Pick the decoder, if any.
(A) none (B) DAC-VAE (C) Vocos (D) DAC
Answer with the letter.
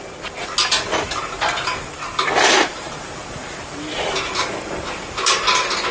A